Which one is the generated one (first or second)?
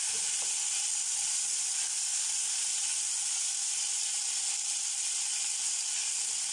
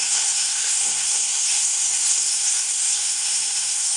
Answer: second